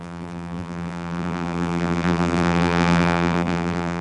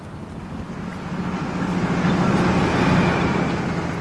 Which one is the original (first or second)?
second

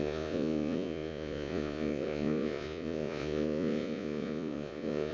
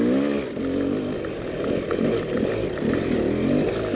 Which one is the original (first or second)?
second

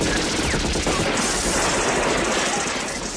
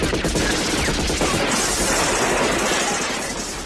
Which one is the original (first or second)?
second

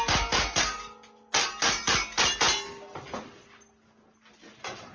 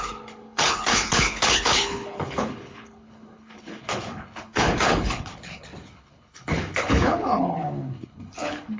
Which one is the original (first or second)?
first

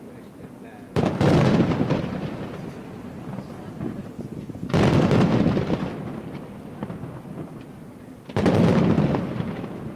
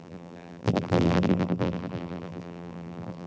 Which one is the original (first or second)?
first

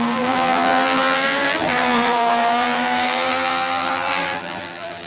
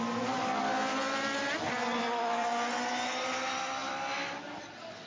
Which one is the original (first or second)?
second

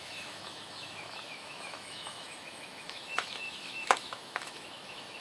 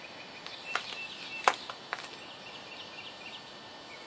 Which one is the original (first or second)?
second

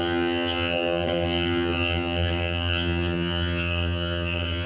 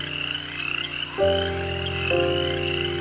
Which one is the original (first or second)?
second